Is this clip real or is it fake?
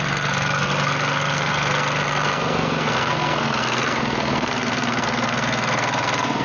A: fake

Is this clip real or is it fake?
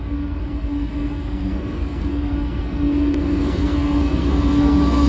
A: fake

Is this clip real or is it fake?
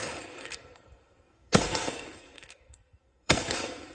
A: fake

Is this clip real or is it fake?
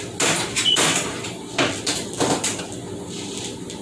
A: real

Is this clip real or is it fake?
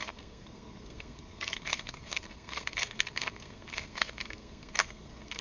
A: fake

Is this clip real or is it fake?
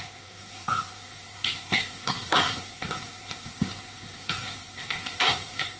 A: fake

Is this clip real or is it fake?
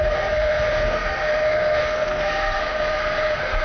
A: fake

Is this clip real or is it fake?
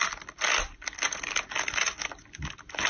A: real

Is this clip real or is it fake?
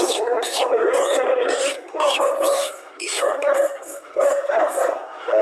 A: fake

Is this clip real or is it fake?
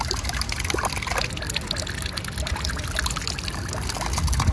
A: real